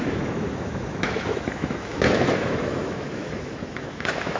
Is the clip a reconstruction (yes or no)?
yes